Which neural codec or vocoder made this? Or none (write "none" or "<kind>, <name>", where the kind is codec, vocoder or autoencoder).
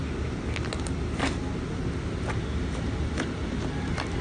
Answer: none